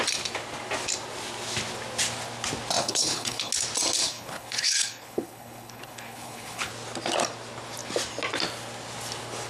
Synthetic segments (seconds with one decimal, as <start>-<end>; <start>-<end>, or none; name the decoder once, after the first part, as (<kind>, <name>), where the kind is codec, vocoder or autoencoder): 2.8-3.5 (codec, HILCodec); 4.0-6.7